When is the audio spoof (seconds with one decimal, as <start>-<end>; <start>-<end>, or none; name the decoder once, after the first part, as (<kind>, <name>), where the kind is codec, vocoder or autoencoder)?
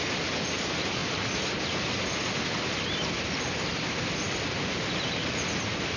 1.0-4.1 (vocoder, BigVGAN v2)